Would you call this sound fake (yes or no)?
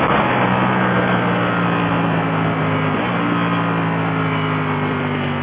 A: no